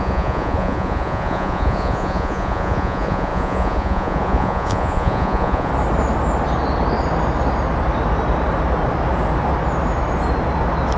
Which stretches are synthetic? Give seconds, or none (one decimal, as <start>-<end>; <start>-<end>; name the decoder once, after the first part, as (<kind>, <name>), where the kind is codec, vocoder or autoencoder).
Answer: 0.0-5.7 (vocoder, Vocos)